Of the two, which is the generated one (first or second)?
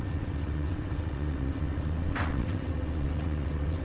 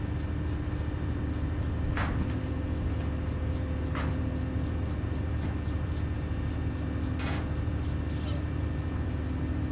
first